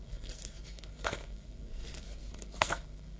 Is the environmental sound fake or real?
fake